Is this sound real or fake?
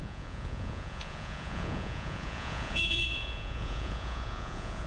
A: fake